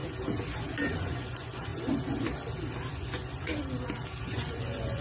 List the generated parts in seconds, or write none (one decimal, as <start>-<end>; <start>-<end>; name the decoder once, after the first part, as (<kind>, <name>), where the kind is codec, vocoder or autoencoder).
0.9-1.7 (vocoder, Vocos); 2.9-3.5; 4.2-5.0